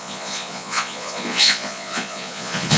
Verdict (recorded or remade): remade